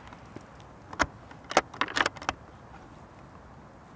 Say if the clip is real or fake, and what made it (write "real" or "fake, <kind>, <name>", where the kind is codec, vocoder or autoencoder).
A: real